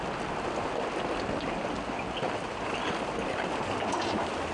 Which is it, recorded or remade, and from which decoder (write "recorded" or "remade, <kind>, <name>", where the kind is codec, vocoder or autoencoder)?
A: recorded